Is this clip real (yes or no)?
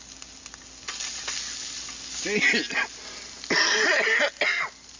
yes